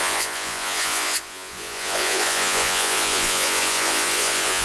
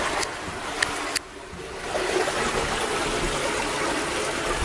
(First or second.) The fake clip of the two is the first